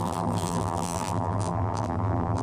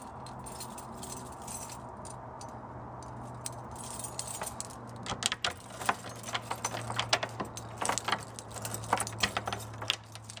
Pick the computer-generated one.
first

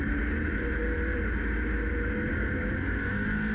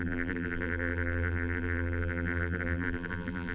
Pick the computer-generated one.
second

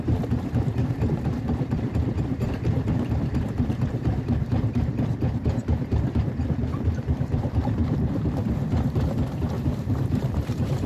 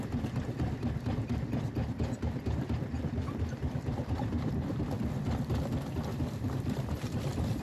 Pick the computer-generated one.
first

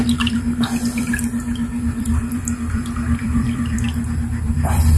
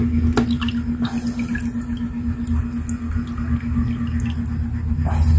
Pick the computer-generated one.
first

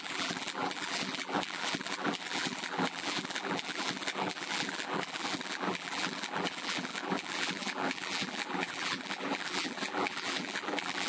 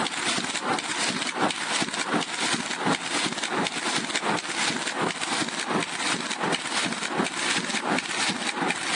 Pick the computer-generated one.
first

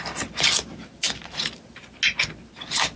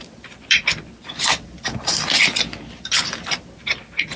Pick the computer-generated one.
second